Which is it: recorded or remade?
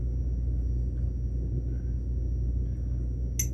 recorded